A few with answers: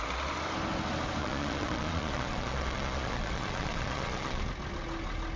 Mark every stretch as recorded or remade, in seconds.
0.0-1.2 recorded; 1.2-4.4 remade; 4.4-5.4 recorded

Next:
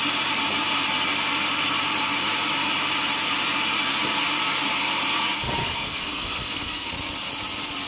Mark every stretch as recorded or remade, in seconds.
0.0-5.6 recorded; 5.6-6.9 remade; 6.9-7.9 recorded

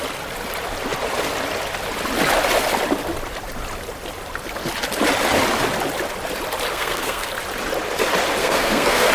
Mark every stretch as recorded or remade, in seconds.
0.0-6.7 recorded; 6.7-7.3 remade; 7.3-8.4 recorded; 8.4-9.1 remade

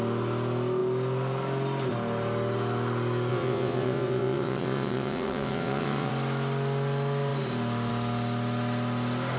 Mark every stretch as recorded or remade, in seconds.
0.0-3.3 recorded; 3.3-6.1 remade; 6.1-9.4 recorded

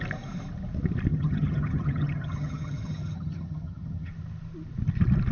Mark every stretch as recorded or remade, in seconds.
0.0-1.1 recorded; 1.1-4.1 remade; 4.1-5.3 recorded